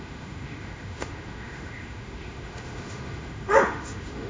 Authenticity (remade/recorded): remade